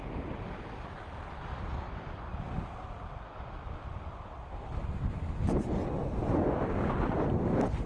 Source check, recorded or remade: recorded